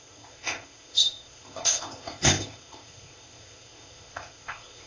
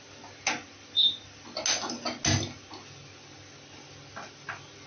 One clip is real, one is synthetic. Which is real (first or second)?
second